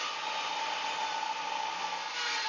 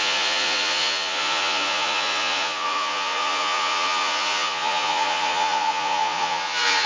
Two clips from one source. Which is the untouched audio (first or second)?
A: first